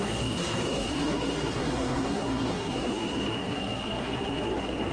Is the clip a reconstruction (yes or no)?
yes